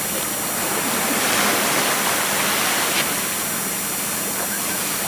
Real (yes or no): yes